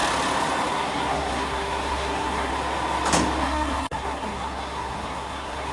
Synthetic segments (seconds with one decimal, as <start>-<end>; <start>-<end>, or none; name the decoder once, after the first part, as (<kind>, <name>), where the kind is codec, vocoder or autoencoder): 0.7-2.5 (codec, SNAC); 3.4-5.7

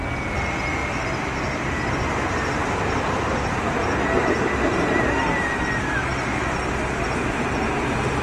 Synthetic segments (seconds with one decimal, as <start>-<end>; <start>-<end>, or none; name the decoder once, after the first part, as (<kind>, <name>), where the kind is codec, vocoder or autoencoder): 0.8-5.6 (vocoder, BigVGAN v2)